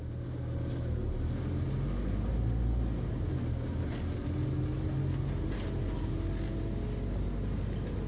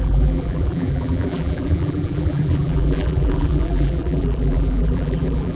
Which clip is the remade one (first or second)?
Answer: second